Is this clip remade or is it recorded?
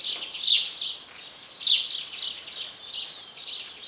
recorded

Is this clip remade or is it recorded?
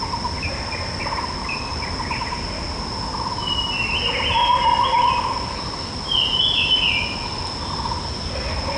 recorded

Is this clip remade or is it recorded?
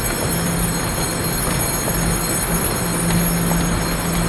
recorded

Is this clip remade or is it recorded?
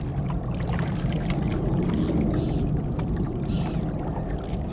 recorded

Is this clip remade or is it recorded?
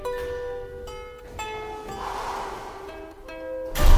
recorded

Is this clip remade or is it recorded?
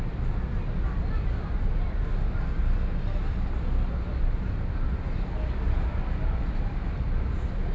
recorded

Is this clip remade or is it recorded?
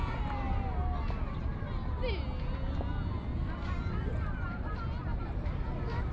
recorded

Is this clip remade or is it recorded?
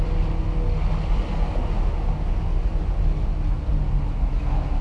recorded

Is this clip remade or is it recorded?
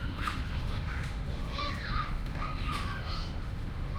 remade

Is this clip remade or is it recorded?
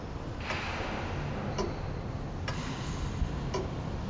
recorded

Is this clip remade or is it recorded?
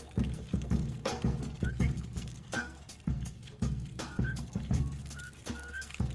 remade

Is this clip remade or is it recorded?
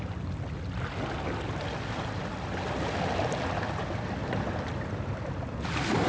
recorded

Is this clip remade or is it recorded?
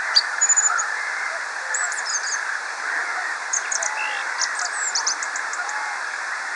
remade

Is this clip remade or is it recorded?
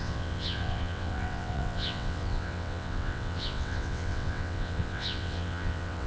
remade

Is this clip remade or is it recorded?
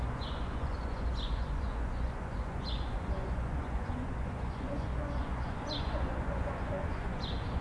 remade